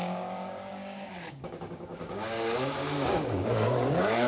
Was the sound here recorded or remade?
remade